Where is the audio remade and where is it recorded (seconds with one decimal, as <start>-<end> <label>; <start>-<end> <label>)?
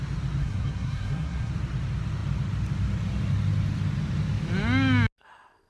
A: 0.0-0.4 recorded; 0.4-1.5 remade; 1.5-5.7 recorded